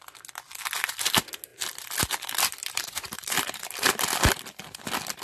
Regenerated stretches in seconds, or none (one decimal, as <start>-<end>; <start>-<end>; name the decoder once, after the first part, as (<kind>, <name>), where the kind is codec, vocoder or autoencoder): 2.6-3.9 (vocoder, BigVGAN v2)